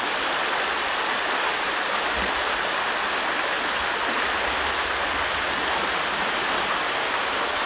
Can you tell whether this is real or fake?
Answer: real